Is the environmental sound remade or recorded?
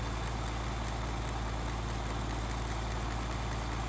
recorded